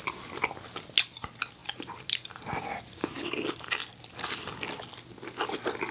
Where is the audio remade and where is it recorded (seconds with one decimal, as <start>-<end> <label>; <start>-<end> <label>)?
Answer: 0.0-5.9 recorded